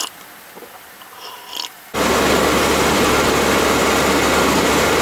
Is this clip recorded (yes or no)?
yes